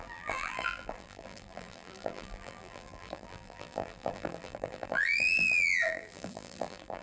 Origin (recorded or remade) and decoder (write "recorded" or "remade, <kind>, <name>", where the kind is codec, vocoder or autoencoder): remade, vocoder, BigVGAN v2